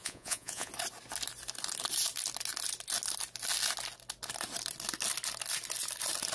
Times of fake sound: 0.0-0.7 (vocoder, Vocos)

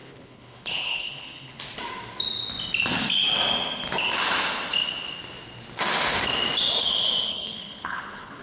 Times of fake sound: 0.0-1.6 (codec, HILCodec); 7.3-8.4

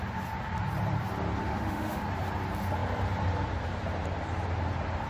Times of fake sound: 1.4-2.0 (autoencoder, DAC-VAE)

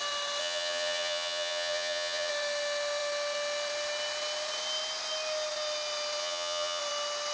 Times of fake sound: 0.4-2.3 (vocoder, HiFi-GAN); 6.2-6.8